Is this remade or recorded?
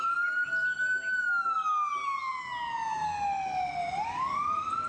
recorded